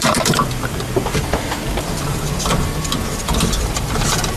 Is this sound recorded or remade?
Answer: remade